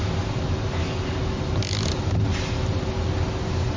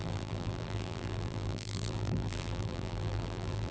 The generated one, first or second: second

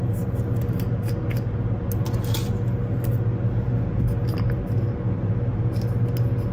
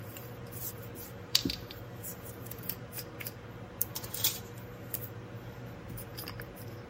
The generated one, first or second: second